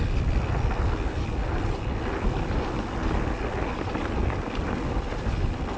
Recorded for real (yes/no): yes